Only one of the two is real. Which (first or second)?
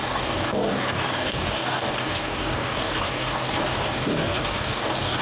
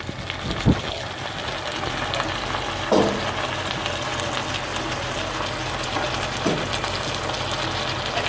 second